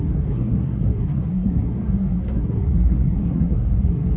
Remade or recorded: remade